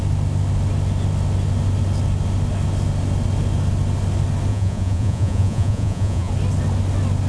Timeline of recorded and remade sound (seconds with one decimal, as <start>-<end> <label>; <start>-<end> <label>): 0.0-4.5 recorded; 4.5-6.3 remade; 6.3-7.3 recorded